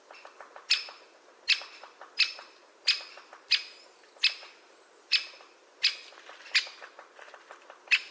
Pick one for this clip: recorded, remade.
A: recorded